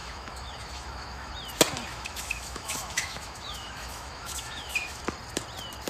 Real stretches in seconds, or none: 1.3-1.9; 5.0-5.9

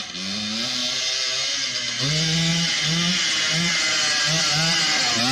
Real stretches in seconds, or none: 0.0-5.3